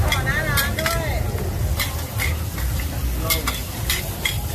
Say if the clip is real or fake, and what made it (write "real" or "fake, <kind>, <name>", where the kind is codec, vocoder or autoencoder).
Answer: real